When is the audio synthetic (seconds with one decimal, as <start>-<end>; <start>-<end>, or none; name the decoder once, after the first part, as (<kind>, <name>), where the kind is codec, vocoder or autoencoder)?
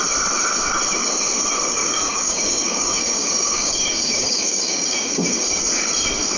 1.8-5.6 (codec, DAC)